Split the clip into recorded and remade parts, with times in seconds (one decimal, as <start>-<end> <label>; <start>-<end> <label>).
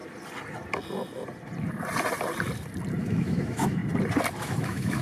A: 0.0-3.0 recorded; 3.0-3.8 remade; 3.8-4.4 recorded; 4.4-5.0 remade